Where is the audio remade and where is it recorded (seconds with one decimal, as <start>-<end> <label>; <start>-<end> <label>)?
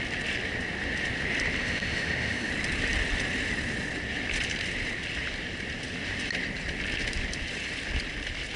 0.0-1.6 recorded; 1.6-2.5 remade; 2.5-8.6 recorded